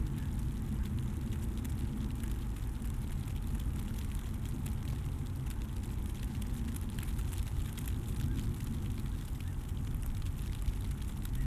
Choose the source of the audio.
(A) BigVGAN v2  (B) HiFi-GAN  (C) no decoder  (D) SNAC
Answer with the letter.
C